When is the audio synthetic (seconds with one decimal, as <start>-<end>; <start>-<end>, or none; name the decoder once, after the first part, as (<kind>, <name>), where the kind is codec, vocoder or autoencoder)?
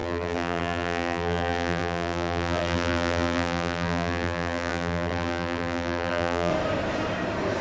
0.0-6.5 (vocoder, BigVGAN v2)